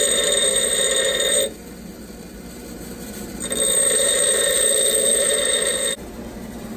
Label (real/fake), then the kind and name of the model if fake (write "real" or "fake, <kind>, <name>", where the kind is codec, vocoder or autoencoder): real